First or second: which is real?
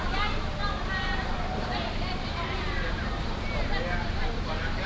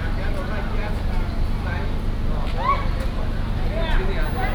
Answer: second